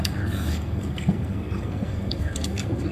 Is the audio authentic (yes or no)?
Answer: no